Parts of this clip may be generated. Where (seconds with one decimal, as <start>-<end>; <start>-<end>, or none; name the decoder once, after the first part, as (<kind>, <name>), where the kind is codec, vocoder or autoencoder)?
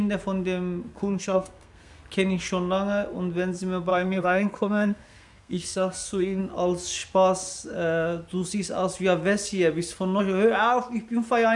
0.9-2.0 (codec, SNAC); 3.9-6.4